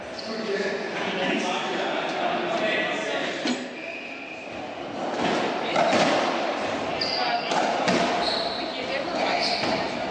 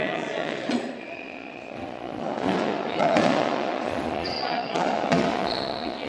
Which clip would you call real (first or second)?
first